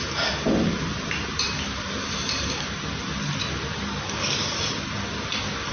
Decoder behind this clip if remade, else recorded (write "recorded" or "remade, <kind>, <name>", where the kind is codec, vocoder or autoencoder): recorded